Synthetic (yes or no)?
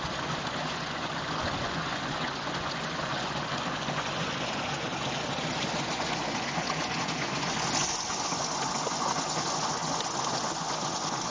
yes